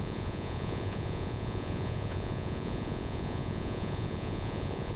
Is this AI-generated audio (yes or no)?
yes